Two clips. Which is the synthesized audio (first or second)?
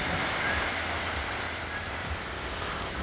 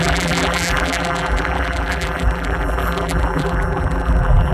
second